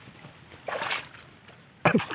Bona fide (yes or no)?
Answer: yes